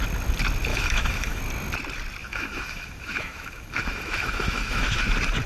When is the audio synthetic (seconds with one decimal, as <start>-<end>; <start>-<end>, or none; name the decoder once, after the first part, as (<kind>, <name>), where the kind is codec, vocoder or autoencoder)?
0.7-1.4 (autoencoder, DAC-VAE); 2.2-5.0